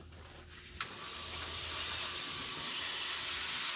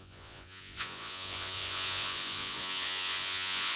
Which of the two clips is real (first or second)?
first